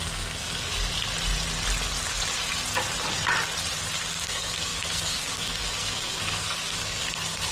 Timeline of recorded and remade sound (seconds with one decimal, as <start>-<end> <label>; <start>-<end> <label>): 0.0-0.7 remade; 0.7-4.0 recorded; 4.0-7.5 remade